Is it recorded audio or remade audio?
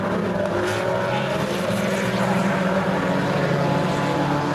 remade